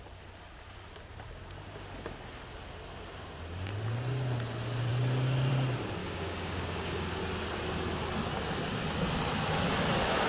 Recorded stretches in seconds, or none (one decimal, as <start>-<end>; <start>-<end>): 0.0-6.0; 7.2-10.3